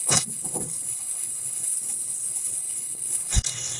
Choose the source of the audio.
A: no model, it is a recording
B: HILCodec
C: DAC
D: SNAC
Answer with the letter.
B